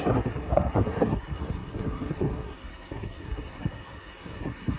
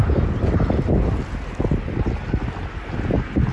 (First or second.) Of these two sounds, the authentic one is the second